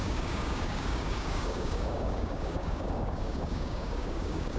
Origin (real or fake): fake